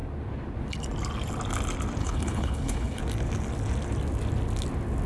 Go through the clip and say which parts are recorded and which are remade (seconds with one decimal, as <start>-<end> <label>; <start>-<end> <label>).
0.0-2.0 recorded; 2.0-3.0 remade; 3.0-5.1 recorded